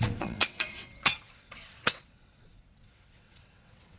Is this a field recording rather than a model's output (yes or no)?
no